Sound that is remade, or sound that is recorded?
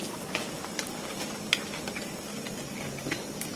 recorded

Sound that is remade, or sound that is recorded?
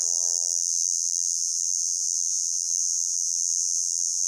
remade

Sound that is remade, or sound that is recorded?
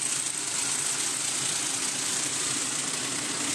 recorded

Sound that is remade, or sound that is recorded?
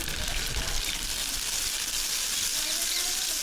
recorded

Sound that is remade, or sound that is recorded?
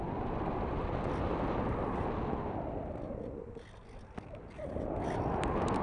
recorded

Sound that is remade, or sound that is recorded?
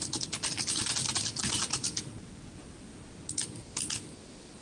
recorded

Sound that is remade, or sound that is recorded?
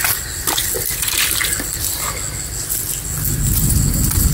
recorded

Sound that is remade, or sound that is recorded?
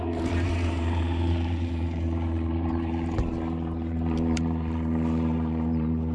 remade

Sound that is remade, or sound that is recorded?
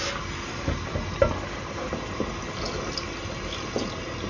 remade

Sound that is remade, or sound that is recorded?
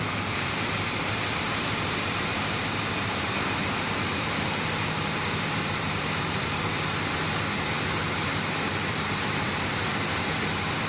remade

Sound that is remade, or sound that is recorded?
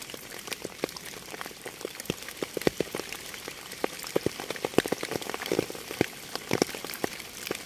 remade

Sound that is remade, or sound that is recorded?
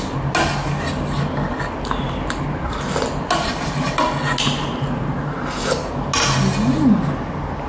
recorded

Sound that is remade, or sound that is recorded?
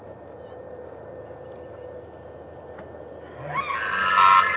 recorded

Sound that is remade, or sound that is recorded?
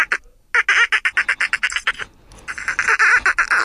recorded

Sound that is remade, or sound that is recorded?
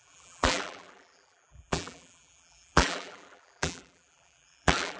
remade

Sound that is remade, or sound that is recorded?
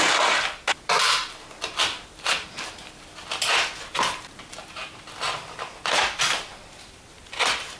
remade